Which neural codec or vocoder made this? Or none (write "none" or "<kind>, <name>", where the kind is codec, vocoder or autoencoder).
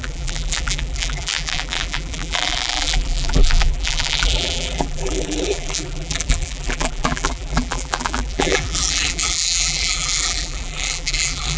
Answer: vocoder, BigVGAN v2